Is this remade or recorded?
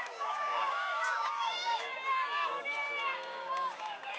remade